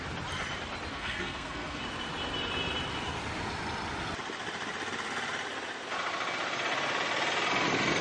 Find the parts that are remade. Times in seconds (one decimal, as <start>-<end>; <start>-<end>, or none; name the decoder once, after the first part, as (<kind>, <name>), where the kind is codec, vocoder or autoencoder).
0.9-1.8 (codec, SNAC)